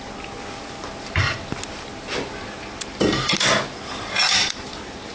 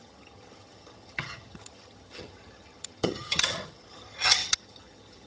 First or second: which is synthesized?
second